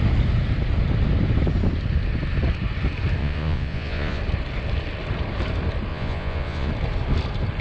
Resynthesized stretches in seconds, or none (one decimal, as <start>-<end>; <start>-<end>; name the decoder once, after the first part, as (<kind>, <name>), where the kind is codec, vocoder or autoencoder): 3.2-4.2 (vocoder, Vocos); 5.9-6.7